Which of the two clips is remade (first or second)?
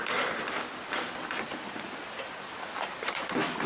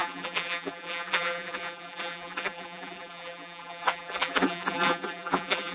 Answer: second